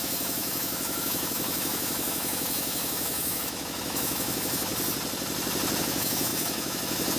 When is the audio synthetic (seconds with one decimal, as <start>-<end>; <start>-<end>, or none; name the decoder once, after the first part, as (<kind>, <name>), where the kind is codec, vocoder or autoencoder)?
0.0-4.7 (autoencoder, DAC-VAE); 5.8-7.2